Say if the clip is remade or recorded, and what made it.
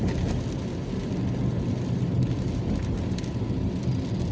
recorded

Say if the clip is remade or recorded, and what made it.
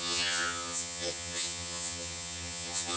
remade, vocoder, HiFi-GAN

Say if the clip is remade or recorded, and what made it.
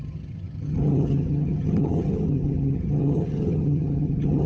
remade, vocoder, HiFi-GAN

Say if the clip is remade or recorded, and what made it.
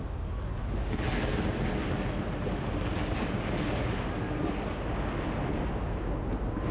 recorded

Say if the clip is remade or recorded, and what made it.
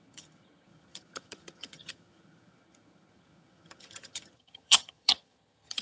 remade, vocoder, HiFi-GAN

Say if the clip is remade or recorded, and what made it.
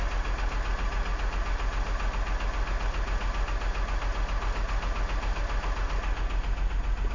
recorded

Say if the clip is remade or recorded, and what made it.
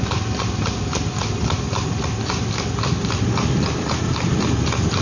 recorded